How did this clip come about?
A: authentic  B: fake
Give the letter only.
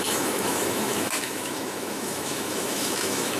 B